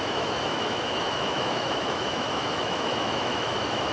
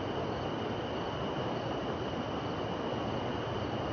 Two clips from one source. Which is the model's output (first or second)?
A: first